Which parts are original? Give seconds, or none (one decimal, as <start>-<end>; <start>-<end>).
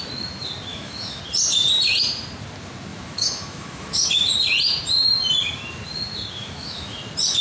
0.0-0.7; 1.2-2.9; 4.1-6.4; 7.0-7.4